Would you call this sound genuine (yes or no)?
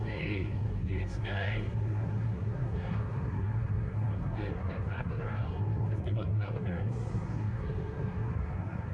no